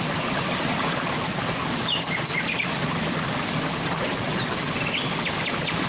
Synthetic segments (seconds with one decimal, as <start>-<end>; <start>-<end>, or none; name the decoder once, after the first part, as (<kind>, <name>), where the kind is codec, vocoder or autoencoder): none